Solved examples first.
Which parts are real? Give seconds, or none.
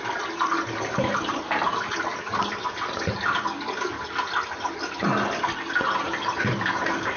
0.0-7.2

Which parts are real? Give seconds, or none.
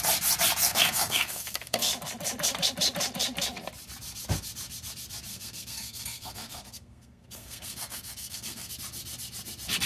0.0-0.6; 1.9-5.3; 8.7-9.9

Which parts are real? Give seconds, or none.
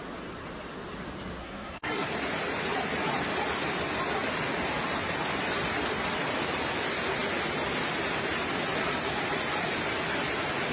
0.0-1.4; 2.1-10.7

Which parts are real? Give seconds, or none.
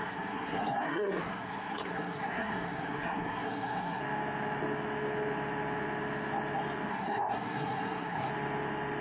4.0-6.9; 8.3-9.0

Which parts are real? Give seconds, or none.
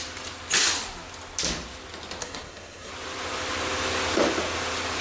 0.0-2.2; 2.9-5.0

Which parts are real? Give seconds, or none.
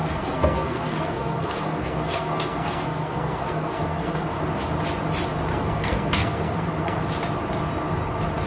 4.4-5.5; 7.0-8.5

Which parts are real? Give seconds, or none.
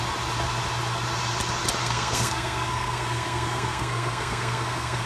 0.0-1.8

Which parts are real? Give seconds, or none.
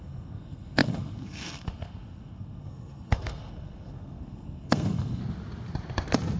5.2-6.4